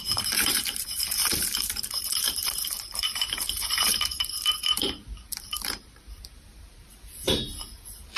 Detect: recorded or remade remade